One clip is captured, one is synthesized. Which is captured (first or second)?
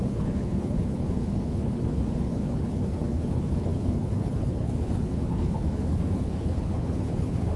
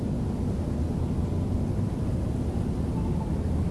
second